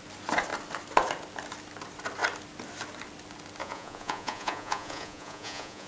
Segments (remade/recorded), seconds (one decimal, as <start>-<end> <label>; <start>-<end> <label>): 0.0-3.6 recorded; 3.6-5.9 remade